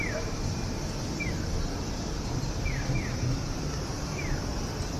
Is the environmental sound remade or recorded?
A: recorded